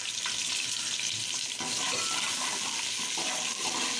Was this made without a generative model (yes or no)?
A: yes